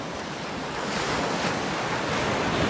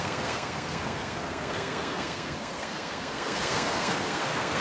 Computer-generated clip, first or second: second